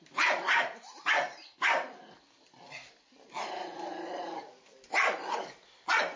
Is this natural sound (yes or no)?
yes